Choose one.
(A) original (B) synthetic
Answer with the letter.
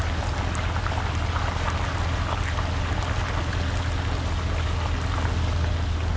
A